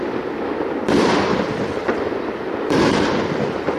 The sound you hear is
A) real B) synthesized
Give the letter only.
A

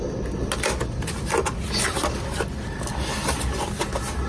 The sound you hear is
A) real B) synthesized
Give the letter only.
A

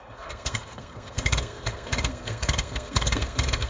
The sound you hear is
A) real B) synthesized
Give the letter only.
B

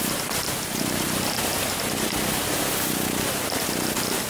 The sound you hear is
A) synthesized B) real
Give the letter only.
B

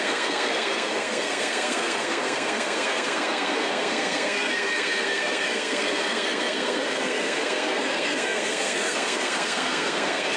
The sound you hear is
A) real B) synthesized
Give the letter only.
B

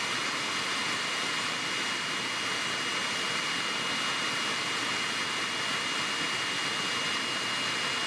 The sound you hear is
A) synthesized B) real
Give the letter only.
B